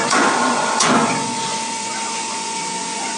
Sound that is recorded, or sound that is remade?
remade